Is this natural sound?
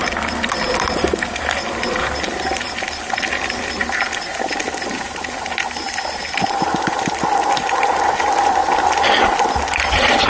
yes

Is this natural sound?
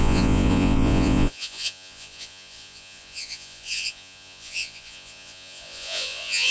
no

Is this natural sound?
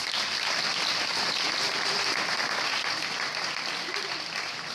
yes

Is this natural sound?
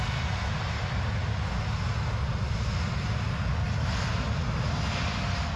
yes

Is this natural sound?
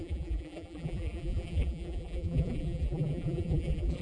no